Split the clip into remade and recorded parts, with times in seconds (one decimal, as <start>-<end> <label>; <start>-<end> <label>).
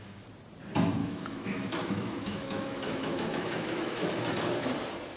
0.0-1.0 recorded; 1.0-4.1 remade; 4.1-5.2 recorded